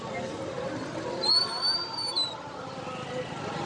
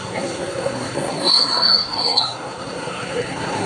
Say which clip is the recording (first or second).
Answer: first